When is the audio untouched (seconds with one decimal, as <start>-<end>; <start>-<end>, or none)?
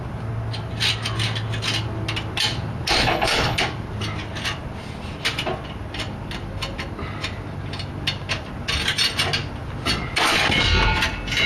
0.0-3.0; 3.6-11.5